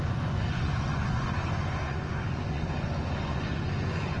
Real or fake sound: fake